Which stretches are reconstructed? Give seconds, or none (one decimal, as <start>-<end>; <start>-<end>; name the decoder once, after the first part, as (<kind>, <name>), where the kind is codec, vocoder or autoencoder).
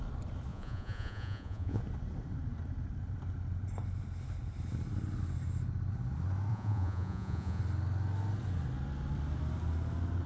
0.5-1.8 (vocoder, Vocos); 6.5-7.6